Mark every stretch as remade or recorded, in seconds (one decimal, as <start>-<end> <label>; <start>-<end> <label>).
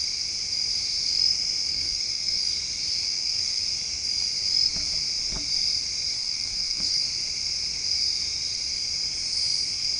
0.0-1.7 recorded; 1.7-2.4 remade; 2.4-3.0 recorded; 3.0-3.6 remade; 3.6-6.1 recorded; 6.1-7.0 remade; 7.0-10.0 recorded